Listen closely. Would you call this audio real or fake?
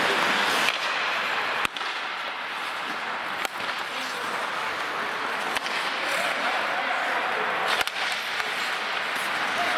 real